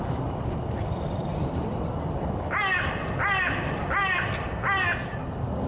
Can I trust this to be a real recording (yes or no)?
yes